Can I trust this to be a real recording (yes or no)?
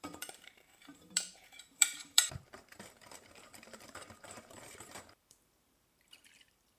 no